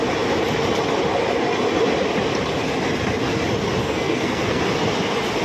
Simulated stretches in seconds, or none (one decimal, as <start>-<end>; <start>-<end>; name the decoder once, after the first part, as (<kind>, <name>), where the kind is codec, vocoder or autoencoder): 3.8-4.6 (codec, SNAC)

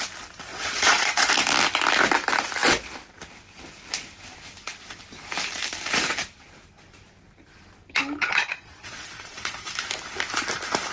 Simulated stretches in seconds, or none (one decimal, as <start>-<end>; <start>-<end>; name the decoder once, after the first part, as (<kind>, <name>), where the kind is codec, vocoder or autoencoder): 0.5-1.3 (vocoder, Vocos); 8.2-9.7

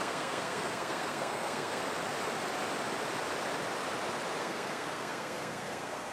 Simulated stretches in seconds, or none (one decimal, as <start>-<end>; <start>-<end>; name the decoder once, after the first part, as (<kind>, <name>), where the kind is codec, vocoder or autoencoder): 0.0-1.8 (codec, SNAC); 4.4-6.1